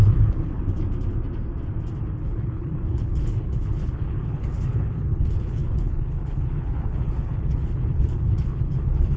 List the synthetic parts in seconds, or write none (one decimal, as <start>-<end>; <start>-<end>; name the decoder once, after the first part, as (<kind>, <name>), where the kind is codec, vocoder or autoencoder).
0.0-0.6 (codec, HILCodec); 2.2-9.2